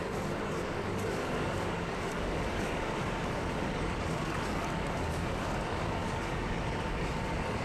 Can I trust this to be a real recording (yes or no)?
no